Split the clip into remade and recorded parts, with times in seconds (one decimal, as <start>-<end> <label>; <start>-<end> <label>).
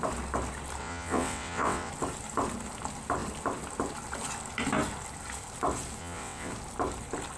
0.0-0.8 recorded; 0.8-1.9 remade; 1.9-6.0 recorded; 6.0-6.5 remade; 6.5-7.4 recorded